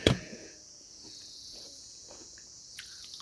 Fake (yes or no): yes